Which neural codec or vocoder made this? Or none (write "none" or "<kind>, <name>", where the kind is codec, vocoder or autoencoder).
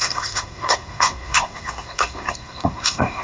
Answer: codec, SNAC